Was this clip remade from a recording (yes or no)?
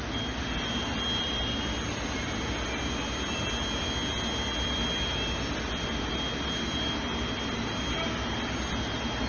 no